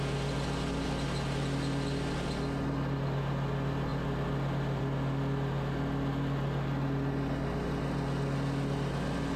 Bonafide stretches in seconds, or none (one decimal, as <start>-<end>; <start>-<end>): 0.0-9.4